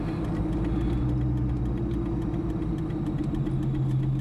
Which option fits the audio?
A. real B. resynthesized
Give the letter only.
A